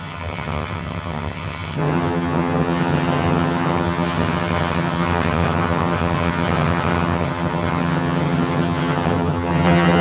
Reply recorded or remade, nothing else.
remade